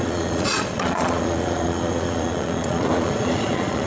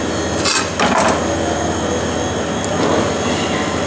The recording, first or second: second